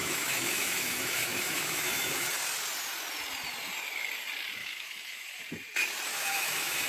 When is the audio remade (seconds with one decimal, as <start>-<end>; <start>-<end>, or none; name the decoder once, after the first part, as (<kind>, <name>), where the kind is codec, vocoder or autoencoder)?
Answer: 0.0-2.3 (autoencoder, DAC-VAE); 4.6-5.4; 6.1-6.9